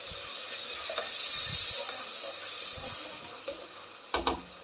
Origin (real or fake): real